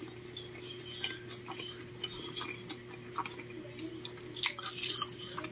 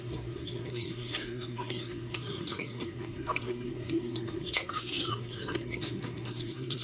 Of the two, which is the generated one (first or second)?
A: second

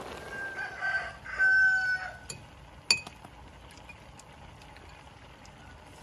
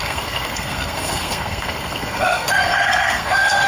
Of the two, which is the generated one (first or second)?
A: second